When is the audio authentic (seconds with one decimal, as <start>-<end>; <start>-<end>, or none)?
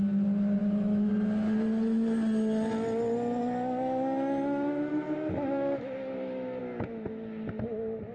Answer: 0.0-0.6; 1.1-3.4; 6.6-8.1